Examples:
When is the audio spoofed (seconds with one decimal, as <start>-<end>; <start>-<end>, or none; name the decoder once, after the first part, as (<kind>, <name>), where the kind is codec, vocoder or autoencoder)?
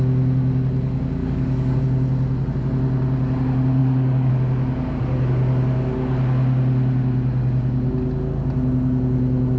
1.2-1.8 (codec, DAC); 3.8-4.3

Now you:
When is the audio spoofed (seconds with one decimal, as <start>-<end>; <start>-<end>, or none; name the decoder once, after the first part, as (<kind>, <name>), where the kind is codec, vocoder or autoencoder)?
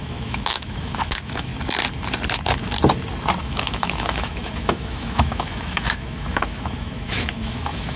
0.0-1.5 (autoencoder, DAC-VAE); 3.4-8.0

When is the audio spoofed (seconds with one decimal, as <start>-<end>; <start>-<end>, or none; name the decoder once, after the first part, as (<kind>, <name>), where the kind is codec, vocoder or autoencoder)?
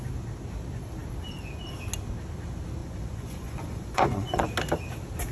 2.8-4.4 (vocoder, Vocos)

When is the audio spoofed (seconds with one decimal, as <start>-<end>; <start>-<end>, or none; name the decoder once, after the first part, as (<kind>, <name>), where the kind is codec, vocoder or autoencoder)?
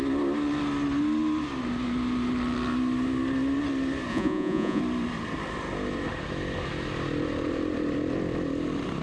4.1-4.8 (vocoder, Vocos)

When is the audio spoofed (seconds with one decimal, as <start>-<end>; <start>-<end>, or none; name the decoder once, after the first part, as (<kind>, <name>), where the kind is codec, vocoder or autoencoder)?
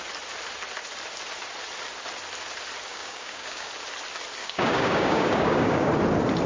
2.9-3.7 (codec, DAC); 4.4-5.9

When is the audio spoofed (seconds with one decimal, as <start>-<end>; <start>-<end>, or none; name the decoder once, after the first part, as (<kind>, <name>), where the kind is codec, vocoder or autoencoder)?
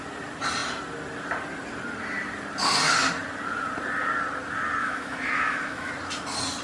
4.8-5.9 (autoencoder, DAC-VAE)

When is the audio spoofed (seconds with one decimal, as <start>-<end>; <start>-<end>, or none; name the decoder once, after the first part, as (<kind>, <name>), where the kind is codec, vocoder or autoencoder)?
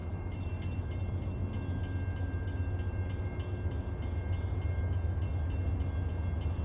0.0-0.9 (autoencoder, DAC-VAE)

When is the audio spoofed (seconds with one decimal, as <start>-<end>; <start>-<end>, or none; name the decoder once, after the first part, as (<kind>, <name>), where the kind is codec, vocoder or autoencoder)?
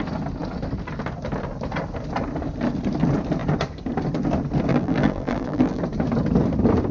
4.7-5.8 (vocoder, BigVGAN v2)